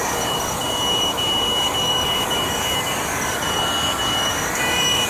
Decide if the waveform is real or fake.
fake